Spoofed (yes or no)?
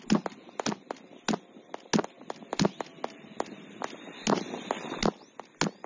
no